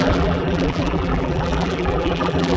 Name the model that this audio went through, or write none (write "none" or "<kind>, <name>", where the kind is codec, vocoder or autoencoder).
vocoder, BigVGAN v2